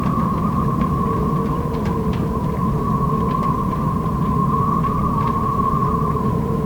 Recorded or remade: recorded